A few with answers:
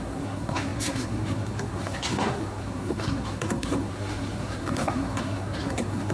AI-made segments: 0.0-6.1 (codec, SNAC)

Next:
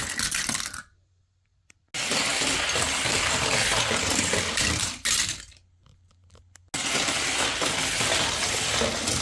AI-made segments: none

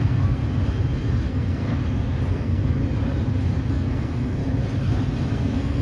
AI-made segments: 0.0-0.4 (codec, SNAC); 1.3-1.8; 2.3-2.8; 3.7-4.4; 5.3-5.8

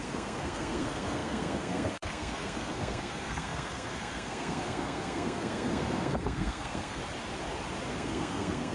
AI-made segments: 0.0-7.0 (codec, SNAC); 7.9-8.7

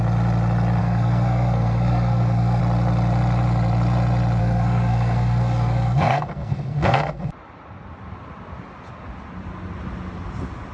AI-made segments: 0.8-2.6 (codec, SNAC); 4.4-7.3

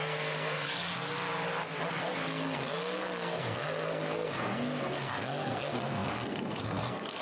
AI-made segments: 0.0-0.9 (codec, SNAC); 1.9-7.2

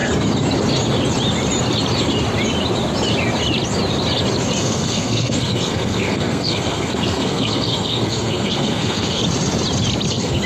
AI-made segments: 4.6-9.2 (codec, SNAC); 10.1-10.5

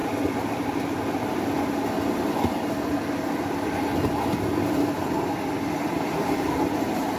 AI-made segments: none